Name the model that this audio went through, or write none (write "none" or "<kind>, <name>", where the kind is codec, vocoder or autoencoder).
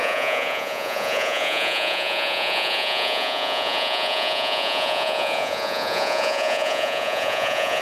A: vocoder, Vocos